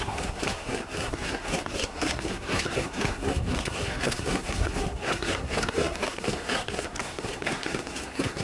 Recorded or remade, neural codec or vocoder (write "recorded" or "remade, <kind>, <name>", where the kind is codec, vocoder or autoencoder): remade, codec, SNAC